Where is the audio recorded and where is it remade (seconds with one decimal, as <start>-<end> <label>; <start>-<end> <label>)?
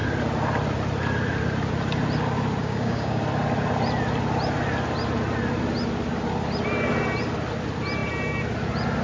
0.0-2.6 recorded; 2.6-3.2 remade; 3.2-9.0 recorded